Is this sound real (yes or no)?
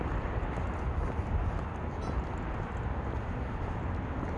yes